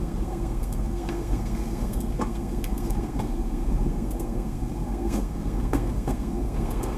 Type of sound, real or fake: fake